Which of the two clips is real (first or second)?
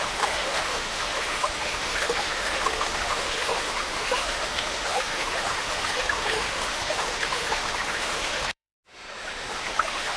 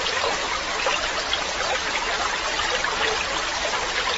second